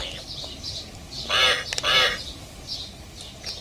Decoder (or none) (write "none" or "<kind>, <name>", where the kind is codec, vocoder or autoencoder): none